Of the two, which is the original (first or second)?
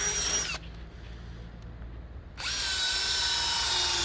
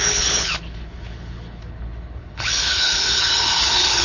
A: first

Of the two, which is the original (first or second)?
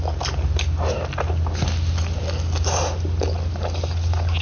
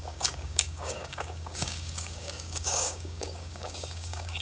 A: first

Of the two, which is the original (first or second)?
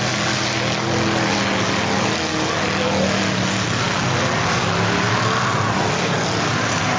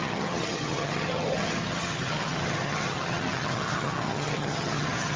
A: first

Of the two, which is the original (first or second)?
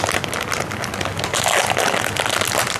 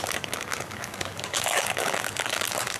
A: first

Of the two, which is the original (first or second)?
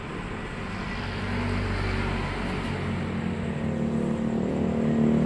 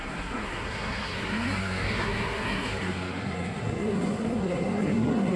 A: first